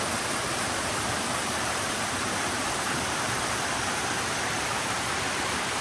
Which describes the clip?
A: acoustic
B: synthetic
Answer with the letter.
B